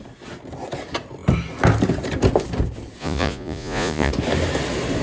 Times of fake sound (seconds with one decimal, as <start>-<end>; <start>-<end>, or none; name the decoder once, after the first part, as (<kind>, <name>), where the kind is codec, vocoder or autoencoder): 3.0-4.1 (vocoder, Vocos)